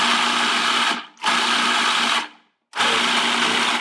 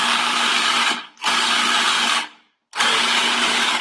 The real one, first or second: first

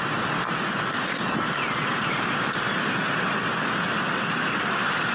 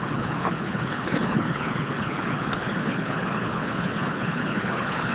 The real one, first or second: first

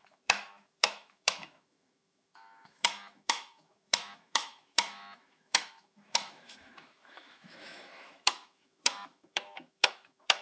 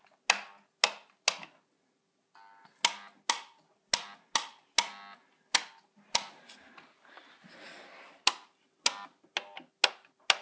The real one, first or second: second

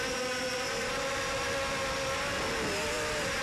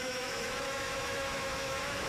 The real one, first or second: first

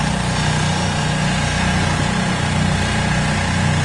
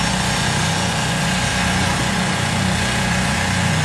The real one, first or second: first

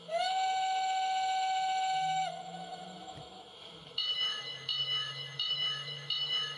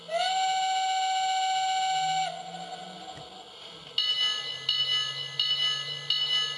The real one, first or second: second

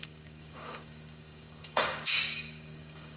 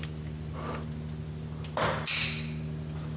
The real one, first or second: second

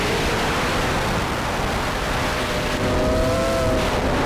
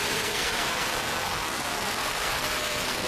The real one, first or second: first